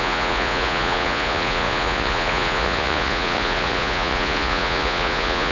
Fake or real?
fake